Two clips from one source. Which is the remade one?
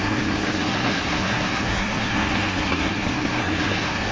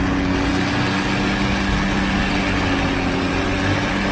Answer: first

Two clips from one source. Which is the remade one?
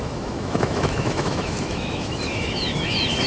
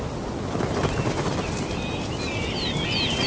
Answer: first